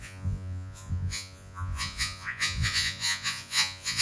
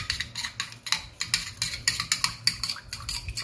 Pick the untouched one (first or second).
second